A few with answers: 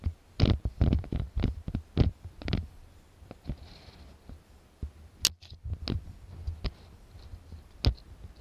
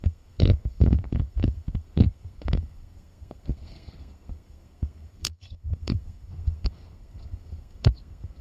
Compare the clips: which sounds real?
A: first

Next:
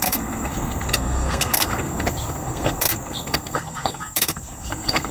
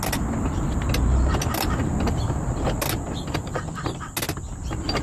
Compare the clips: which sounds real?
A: second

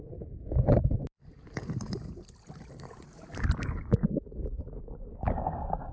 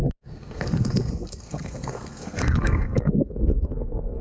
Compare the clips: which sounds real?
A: first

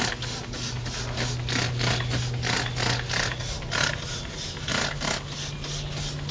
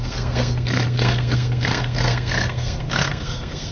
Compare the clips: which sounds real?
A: first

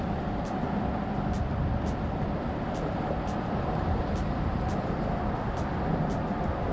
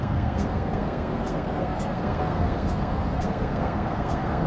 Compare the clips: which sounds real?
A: first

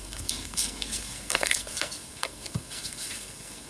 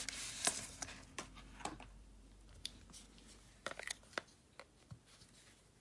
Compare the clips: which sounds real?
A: second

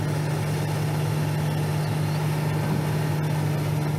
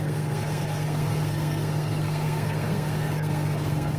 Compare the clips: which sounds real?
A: first